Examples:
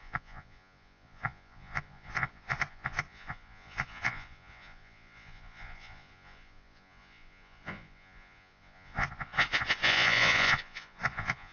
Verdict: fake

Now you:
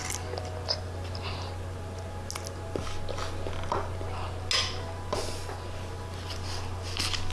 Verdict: real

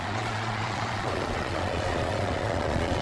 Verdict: fake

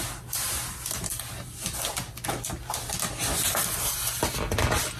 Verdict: real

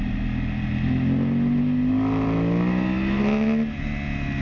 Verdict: real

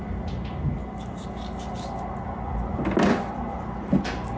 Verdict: real